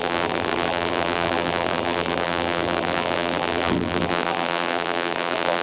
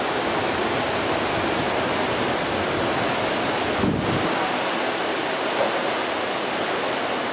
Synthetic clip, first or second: first